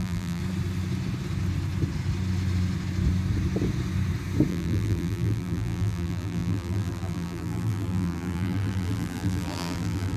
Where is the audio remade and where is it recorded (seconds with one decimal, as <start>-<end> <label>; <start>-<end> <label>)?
0.0-0.4 remade; 0.4-4.5 recorded; 4.5-10.2 remade